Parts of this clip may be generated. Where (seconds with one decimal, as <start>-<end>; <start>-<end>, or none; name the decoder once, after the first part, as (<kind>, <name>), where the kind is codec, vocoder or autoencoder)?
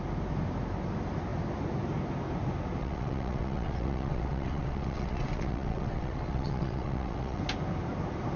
2.8-7.4 (vocoder, WaveNeXt)